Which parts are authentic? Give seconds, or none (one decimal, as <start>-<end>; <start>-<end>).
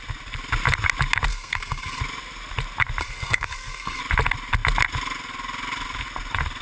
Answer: 0.0-1.3; 2.0-3.0; 4.0-6.6